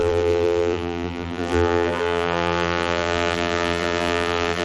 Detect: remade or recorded remade